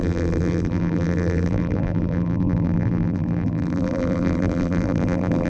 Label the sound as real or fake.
fake